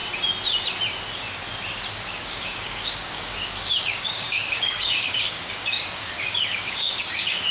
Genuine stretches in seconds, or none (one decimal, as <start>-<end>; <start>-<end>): 0.0-1.9